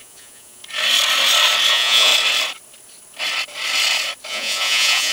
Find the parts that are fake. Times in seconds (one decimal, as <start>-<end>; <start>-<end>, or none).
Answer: 0.0-0.6; 1.7-2.1; 4.3-5.1